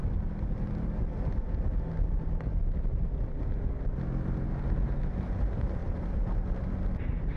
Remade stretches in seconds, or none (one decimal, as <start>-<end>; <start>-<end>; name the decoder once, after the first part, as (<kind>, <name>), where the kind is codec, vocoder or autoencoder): 5.8-7.4 (vocoder, BigVGAN v2)